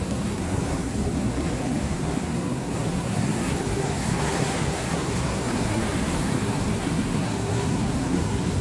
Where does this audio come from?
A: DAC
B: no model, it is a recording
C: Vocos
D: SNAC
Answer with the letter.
D